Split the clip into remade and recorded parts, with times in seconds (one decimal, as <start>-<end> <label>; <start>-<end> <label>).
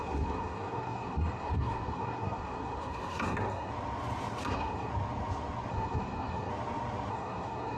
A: 0.0-3.7 remade; 3.7-4.4 recorded; 4.4-4.9 remade; 4.9-5.7 recorded; 5.7-6.5 remade; 6.5-7.1 recorded; 7.1-7.8 remade